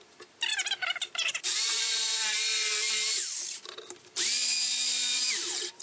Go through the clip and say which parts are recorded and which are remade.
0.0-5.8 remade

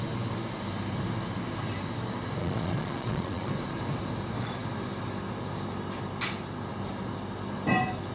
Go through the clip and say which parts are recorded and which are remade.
0.0-2.4 recorded; 2.4-3.5 remade; 3.5-8.1 recorded

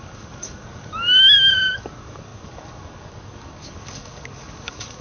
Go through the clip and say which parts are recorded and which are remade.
0.0-5.0 remade

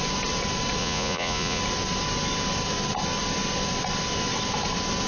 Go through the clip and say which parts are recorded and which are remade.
0.0-0.8 recorded; 0.8-1.6 remade; 1.6-5.1 recorded